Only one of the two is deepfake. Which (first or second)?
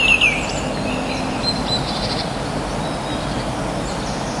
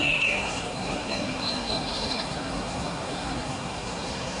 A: second